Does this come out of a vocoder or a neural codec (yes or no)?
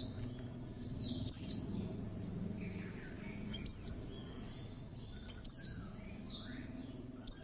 no